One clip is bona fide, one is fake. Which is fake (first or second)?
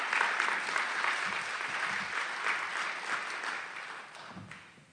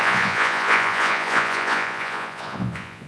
second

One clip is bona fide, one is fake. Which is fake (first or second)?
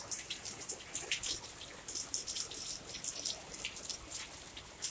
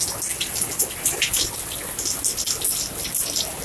first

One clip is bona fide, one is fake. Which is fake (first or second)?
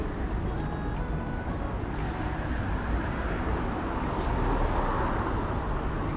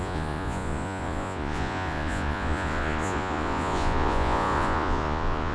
second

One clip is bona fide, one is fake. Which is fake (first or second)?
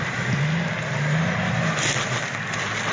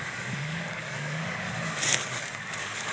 second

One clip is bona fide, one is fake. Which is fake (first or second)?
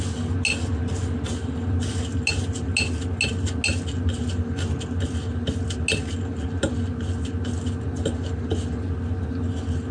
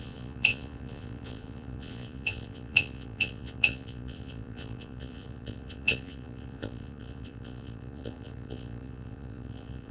second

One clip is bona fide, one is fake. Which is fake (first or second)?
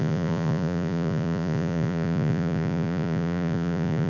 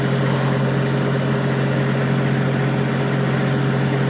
first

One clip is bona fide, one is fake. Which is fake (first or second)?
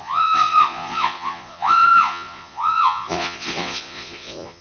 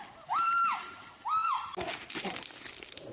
first